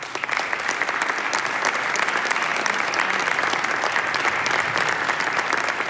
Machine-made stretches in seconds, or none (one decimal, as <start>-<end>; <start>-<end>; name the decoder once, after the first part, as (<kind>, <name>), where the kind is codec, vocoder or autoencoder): none